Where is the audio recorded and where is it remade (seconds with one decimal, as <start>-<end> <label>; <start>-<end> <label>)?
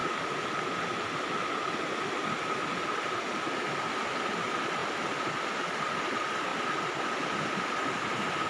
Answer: 0.0-8.5 recorded